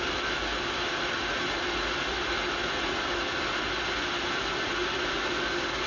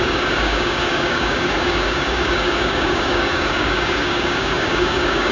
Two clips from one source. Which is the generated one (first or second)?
second